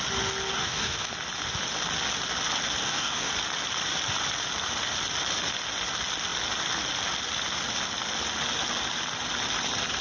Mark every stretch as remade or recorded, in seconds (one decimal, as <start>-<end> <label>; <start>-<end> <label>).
0.0-0.5 recorded; 0.5-1.1 remade; 1.1-2.8 recorded; 2.8-3.3 remade; 3.3-10.0 recorded